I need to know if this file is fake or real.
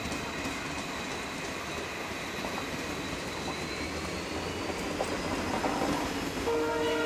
real